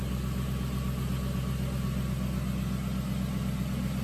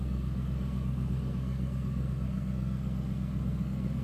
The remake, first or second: second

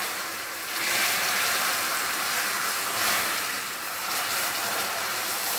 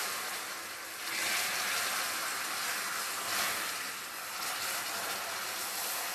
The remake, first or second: first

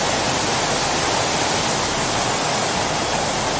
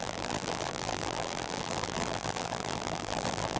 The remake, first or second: second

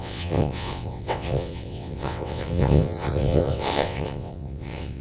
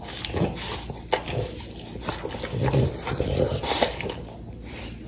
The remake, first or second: first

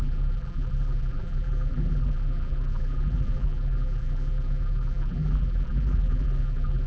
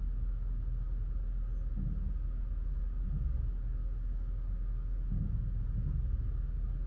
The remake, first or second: first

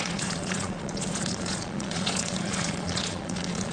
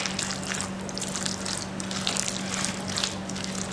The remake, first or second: first